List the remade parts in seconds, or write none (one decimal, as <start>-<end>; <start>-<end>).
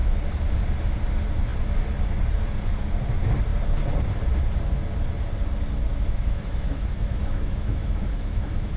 5.9-8.8